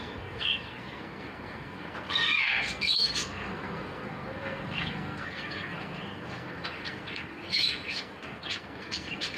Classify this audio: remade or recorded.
remade